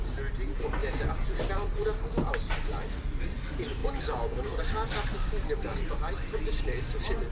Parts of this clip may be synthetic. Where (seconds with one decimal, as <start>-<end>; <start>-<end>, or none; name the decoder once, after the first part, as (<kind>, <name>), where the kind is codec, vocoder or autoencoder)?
none